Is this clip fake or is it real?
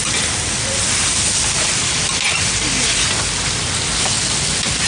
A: real